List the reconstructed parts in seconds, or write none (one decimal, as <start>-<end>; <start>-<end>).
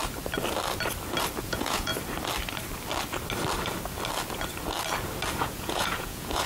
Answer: 1.4-1.9; 5.4-6.5